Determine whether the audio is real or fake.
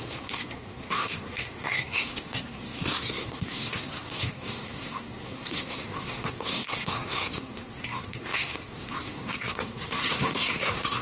fake